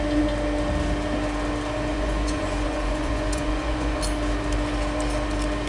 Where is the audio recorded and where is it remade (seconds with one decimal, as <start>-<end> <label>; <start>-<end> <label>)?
0.0-1.9 recorded; 1.9-4.0 remade; 4.0-5.7 recorded